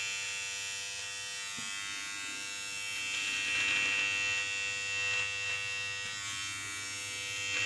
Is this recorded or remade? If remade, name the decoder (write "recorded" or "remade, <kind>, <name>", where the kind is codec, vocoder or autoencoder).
recorded